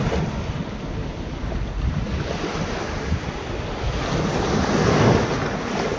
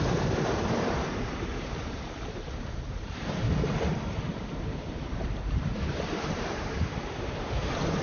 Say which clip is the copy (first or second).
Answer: second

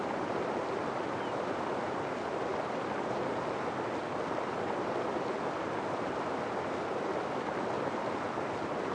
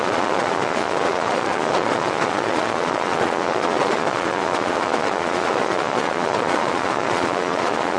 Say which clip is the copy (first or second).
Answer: second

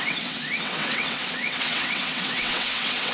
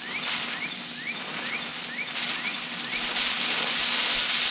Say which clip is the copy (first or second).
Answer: first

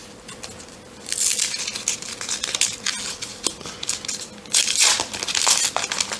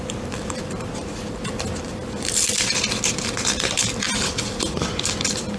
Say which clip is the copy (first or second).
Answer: second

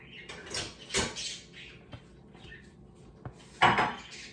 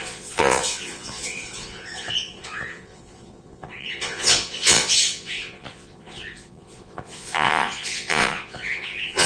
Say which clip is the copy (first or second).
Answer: second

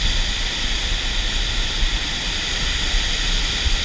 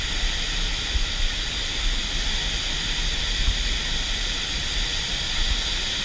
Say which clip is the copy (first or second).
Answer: first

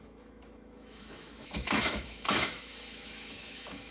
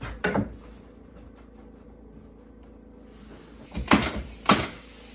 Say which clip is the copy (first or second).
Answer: first